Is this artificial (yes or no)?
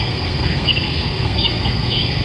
yes